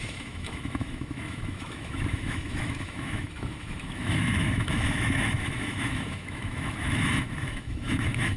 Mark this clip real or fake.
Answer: fake